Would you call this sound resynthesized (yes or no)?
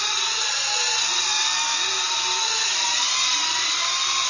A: no